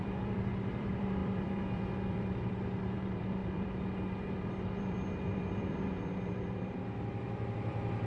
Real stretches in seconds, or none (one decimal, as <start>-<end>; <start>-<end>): none